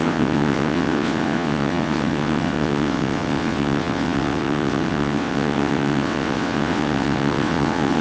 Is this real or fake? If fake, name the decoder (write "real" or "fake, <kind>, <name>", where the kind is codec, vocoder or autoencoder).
fake, vocoder, WaveNeXt